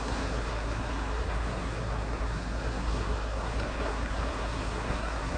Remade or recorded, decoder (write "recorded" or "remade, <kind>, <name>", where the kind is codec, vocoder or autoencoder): remade, codec, SNAC